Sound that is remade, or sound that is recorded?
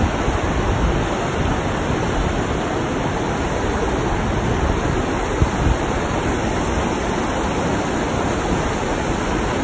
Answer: recorded